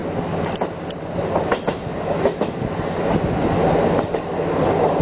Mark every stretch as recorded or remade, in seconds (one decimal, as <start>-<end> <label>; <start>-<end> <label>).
0.0-5.0 recorded